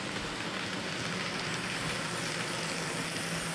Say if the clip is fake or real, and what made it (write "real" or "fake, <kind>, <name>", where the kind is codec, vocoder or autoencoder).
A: real